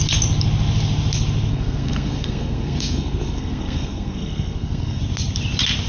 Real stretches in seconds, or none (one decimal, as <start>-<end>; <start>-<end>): 0.0-1.5; 5.0-5.9